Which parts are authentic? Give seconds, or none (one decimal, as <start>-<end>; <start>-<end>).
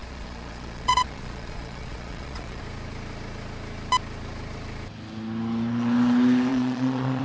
2.6-6.5